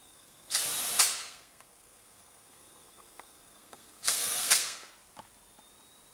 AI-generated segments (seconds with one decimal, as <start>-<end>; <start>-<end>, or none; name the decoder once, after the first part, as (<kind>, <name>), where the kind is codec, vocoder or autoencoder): 0.0-0.6 (codec, SNAC); 1.2-4.9